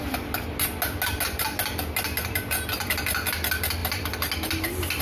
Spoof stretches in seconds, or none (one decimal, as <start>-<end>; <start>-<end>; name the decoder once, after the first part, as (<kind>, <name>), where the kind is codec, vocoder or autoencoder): none